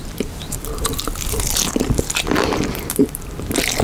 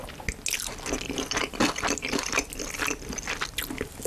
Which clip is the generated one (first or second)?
first